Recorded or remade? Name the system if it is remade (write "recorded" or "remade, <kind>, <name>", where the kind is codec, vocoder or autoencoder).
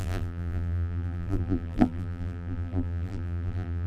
remade, vocoder, BigVGAN v2